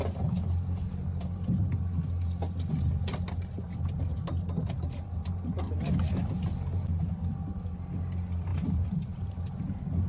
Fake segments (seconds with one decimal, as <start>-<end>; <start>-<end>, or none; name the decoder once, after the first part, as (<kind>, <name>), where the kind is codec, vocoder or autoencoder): 8.5-9.3 (vocoder, BigVGAN v2)